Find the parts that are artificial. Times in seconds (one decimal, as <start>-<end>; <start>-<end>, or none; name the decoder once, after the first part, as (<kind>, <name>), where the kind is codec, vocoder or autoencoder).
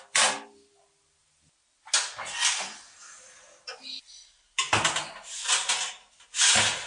none